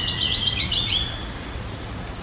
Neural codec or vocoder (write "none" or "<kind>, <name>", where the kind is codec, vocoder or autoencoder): vocoder, Vocos